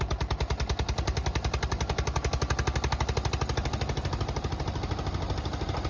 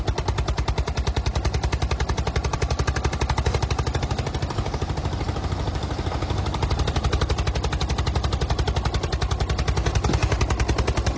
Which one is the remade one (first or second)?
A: second